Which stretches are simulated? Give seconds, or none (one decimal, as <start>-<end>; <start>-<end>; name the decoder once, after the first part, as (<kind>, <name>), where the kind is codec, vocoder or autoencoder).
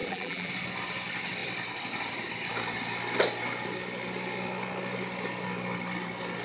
0.0-0.5 (vocoder, BigVGAN v2)